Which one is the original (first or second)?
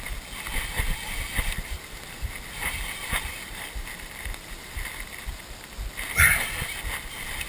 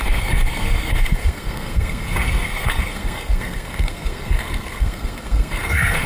first